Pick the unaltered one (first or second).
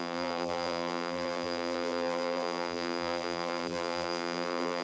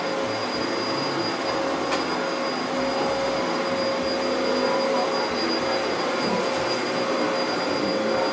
second